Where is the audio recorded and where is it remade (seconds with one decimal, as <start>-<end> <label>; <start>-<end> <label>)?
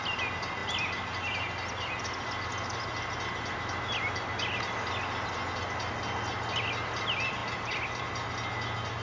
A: 0.0-9.0 recorded